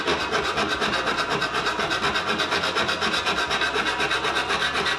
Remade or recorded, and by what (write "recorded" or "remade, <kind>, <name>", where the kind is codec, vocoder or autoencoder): recorded